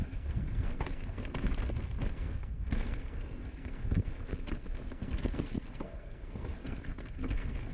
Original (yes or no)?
no